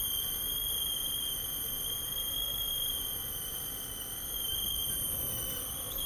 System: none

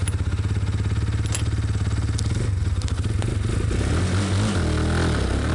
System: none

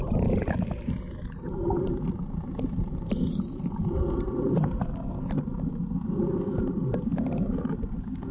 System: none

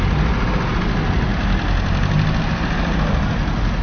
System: none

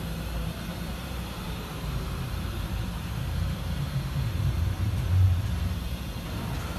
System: vocoder, BigVGAN v2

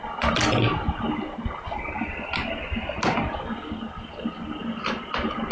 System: none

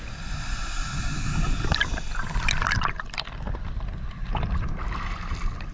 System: none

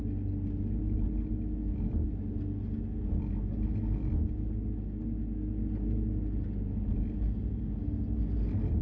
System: none